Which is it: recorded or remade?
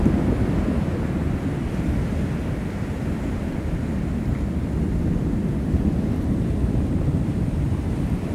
remade